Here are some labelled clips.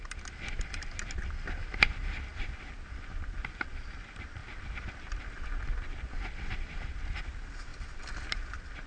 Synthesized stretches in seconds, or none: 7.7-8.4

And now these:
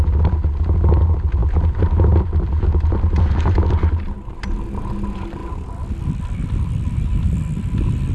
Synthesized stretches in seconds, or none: 1.4-4.1

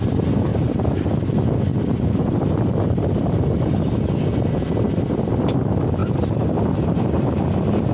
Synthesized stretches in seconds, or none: 0.5-1.1; 1.7-3.6; 6.0-7.3

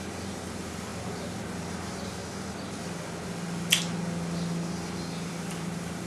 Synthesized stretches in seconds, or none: 0.0-0.9; 1.7-2.2; 5.3-6.1

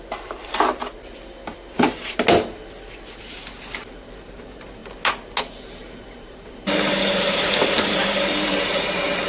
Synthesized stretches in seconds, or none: 0.0-0.8; 3.2-4.8; 5.4-9.3